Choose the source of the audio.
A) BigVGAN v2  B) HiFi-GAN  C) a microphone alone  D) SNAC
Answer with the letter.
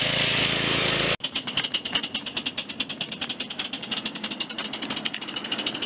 C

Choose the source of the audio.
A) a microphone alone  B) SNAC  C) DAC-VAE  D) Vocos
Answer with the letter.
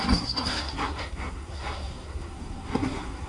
B